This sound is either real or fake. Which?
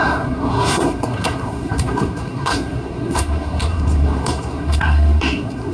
fake